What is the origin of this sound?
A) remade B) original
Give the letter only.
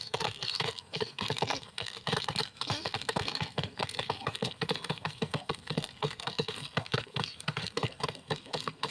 A